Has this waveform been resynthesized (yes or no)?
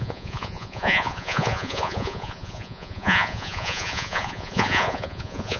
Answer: yes